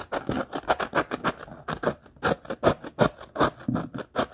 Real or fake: real